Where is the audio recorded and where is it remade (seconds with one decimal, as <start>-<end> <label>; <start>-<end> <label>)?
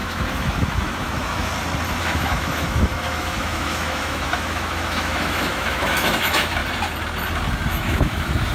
0.0-1.5 remade; 1.5-2.0 recorded; 2.0-6.6 remade; 6.6-7.7 recorded; 7.7-8.5 remade